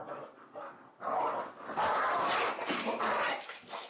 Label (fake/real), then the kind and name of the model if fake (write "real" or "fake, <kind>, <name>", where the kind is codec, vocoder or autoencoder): real